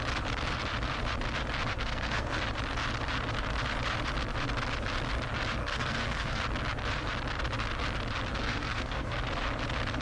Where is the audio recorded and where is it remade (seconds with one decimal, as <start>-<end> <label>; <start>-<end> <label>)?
0.0-1.7 recorded; 1.7-2.4 remade; 2.4-5.6 recorded; 5.6-6.4 remade; 6.4-8.3 recorded; 8.3-9.2 remade; 9.2-10.0 recorded